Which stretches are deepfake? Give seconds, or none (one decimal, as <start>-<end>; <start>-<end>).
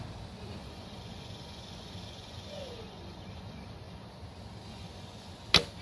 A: 0.6-4.1; 4.7-5.3